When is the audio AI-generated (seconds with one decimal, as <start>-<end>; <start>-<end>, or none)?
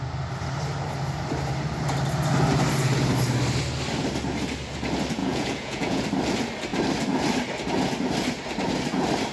5.2-6.0